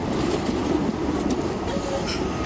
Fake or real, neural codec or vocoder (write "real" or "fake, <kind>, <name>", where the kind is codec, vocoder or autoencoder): real